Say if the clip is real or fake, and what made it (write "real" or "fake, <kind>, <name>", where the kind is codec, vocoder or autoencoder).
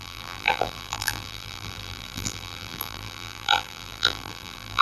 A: fake, vocoder, BigVGAN v2